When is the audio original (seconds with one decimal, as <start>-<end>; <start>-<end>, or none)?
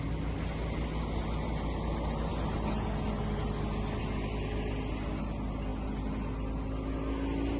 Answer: 0.0-7.6